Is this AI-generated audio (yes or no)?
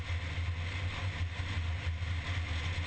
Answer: no